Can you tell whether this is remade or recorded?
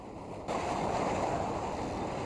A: recorded